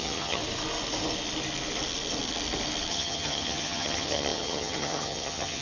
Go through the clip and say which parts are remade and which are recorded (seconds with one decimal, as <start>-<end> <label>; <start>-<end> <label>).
0.0-0.4 remade; 0.4-2.9 recorded; 2.9-5.6 remade